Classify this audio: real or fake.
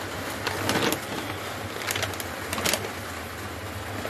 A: real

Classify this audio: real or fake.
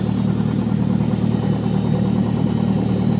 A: real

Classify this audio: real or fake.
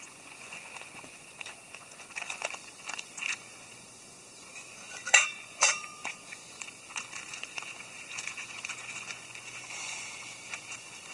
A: fake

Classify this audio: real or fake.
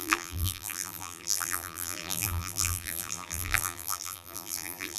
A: fake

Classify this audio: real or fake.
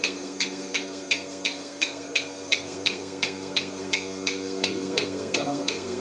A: fake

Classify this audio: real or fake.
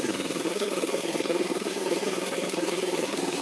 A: fake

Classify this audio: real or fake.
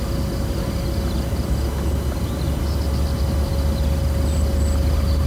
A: real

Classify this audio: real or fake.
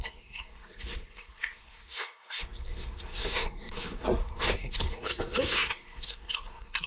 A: fake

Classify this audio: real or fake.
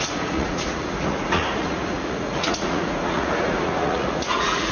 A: fake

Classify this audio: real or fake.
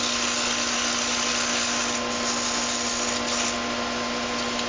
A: real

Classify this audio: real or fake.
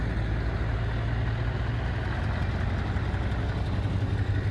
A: real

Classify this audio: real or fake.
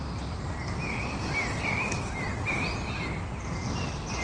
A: real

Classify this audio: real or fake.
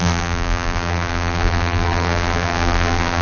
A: fake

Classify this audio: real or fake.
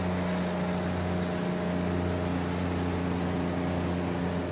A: real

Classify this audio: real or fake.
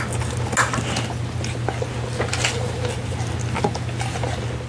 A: real